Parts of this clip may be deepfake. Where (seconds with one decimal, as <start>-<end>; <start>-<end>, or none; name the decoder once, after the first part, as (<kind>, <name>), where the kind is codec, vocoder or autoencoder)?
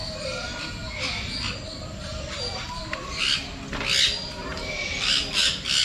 2.1-2.8 (vocoder, BigVGAN v2); 4.5-5.8